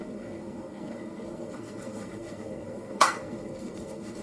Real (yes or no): no